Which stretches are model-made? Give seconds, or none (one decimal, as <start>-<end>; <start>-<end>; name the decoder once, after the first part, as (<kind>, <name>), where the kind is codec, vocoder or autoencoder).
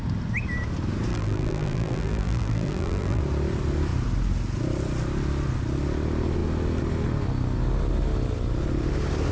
1.1-3.2 (vocoder, BigVGAN v2)